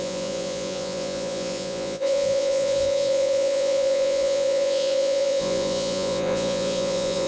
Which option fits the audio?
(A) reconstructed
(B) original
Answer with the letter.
A